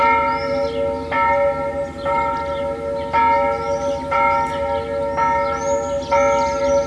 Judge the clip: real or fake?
real